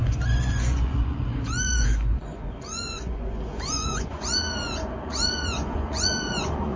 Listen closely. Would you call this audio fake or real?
fake